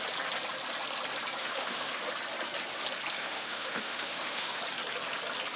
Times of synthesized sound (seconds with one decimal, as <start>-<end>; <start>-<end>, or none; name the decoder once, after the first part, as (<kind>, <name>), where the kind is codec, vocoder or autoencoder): 1.4-2.0 (autoencoder, DAC-VAE); 3.2-4.6